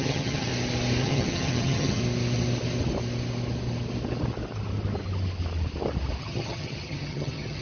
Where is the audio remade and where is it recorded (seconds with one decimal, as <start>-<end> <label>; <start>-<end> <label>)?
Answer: 0.0-0.5 remade; 0.5-1.0 recorded; 1.0-2.0 remade; 2.0-6.2 recorded; 6.2-7.6 remade